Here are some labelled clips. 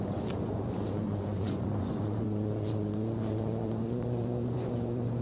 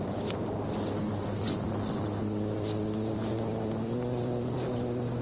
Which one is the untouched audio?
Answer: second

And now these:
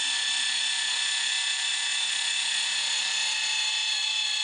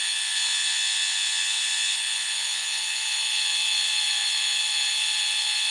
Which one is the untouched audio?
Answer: first